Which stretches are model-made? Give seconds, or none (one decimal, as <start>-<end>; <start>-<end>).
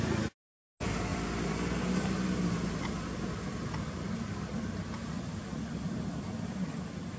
none